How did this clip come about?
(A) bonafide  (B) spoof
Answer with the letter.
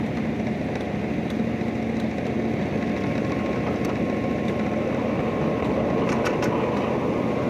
A